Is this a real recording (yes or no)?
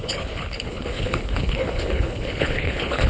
no